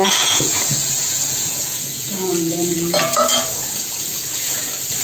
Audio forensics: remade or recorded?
remade